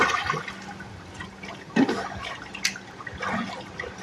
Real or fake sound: real